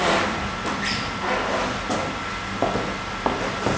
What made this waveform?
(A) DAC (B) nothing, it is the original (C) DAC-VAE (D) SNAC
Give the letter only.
B